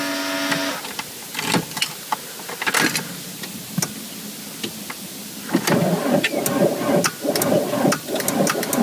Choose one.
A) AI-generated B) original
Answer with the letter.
B